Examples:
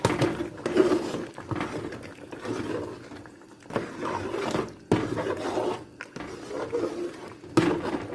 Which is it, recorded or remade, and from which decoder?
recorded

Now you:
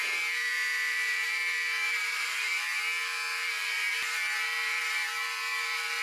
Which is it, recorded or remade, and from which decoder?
remade, vocoder, BigVGAN v2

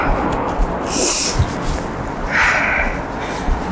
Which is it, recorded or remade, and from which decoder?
recorded